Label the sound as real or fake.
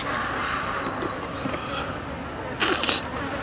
real